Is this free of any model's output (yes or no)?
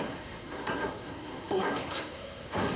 no